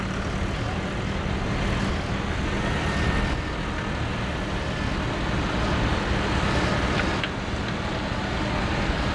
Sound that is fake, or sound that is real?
real